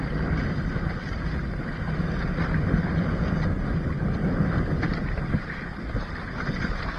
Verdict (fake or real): real